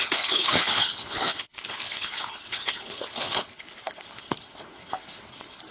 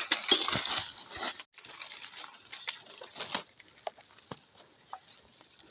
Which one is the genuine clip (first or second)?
second